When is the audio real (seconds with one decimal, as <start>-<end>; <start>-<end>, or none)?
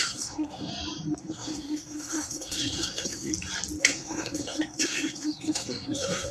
0.7-1.2; 3.3-3.8